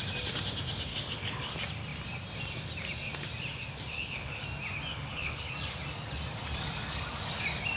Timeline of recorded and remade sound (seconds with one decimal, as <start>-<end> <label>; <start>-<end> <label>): 0.0-0.9 recorded; 0.9-1.5 remade; 1.5-3.9 recorded; 3.9-4.4 remade; 4.4-4.9 recorded; 4.9-5.4 remade; 5.4-7.8 recorded